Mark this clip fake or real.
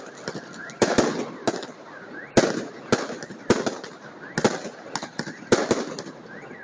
real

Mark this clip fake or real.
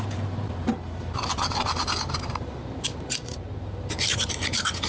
fake